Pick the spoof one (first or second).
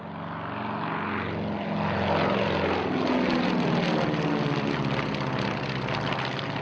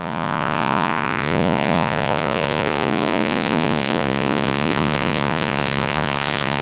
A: second